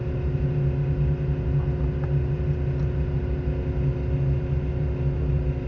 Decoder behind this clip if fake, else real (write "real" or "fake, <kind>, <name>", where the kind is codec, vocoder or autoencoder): real